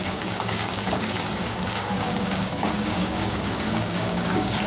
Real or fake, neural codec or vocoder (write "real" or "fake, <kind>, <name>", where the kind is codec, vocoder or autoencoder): fake, codec, DAC